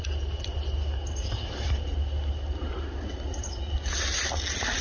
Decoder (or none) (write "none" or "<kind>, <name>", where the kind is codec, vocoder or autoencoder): none